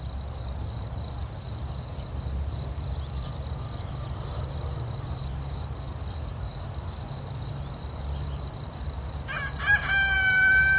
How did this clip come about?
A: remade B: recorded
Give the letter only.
A